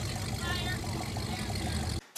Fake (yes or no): no